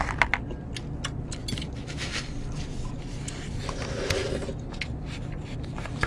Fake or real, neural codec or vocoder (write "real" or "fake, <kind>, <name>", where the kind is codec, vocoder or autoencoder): real